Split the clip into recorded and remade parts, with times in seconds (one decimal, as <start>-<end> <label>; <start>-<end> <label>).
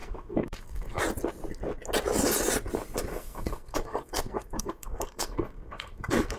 0.0-1.0 remade; 1.0-3.1 recorded; 3.1-6.4 remade